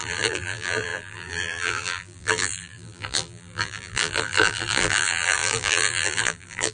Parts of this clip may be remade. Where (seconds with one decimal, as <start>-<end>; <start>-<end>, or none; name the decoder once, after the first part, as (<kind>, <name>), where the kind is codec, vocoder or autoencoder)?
0.0-6.7 (vocoder, BigVGAN v2)